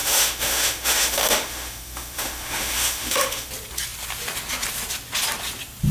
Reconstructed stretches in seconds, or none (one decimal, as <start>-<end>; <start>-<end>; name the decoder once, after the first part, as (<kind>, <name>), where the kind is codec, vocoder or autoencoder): 0.0-3.5 (autoencoder, DAC-VAE)